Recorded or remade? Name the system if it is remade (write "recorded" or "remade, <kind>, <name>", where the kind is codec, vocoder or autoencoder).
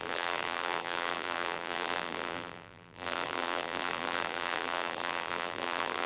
remade, vocoder, BigVGAN v2